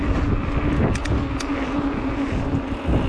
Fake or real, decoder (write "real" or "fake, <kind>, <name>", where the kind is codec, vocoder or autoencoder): real